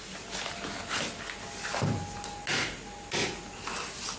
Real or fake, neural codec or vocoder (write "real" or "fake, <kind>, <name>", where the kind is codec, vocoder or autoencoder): real